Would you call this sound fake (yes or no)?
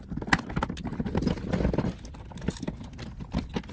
no